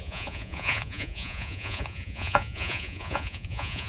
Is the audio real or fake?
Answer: fake